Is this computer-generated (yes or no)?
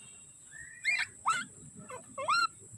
yes